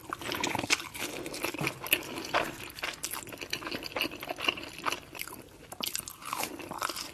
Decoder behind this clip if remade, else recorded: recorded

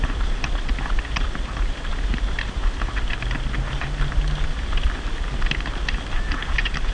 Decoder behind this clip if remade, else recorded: recorded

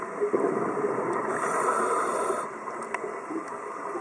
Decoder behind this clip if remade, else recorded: remade, vocoder, BigVGAN v2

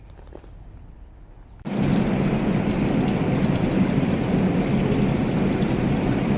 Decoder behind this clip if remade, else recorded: recorded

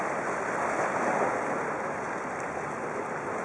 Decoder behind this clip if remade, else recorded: recorded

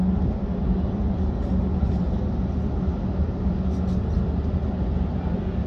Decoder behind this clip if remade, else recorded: recorded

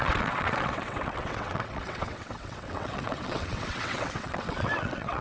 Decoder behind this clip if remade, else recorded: remade, vocoder, WaveNeXt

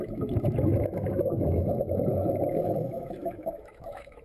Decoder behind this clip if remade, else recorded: remade, autoencoder, DAC-VAE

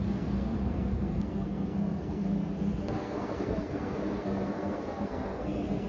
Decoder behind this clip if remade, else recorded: remade, codec, SNAC